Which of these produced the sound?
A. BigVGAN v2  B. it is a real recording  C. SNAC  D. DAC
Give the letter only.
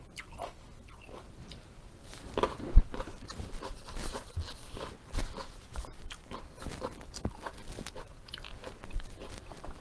A